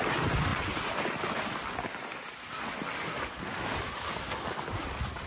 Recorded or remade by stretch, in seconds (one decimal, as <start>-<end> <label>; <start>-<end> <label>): 0.0-5.3 recorded